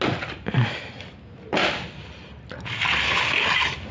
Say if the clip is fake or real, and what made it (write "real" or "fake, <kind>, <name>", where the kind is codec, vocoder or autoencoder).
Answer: real